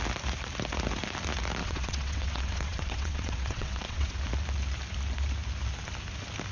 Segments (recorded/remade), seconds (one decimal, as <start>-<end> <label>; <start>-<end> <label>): 0.0-1.6 recorded; 1.6-4.2 remade; 4.2-6.5 recorded